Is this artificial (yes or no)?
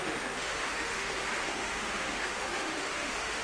yes